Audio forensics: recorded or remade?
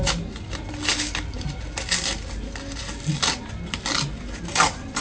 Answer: recorded